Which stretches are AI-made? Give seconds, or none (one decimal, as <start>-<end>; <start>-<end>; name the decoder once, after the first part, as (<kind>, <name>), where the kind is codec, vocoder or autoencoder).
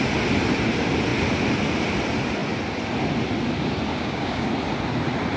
3.9-4.5 (codec, DAC)